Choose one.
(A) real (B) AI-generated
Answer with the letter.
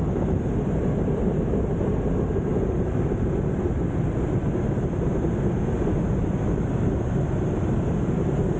A